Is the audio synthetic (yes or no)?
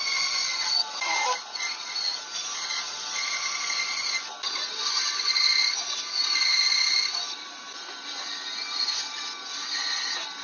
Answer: no